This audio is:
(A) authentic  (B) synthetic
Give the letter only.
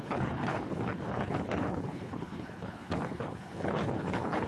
B